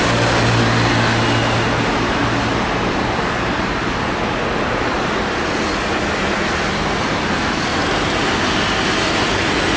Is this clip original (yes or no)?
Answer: yes